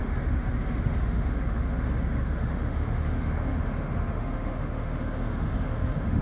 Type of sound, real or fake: fake